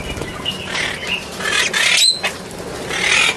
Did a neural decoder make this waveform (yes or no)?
no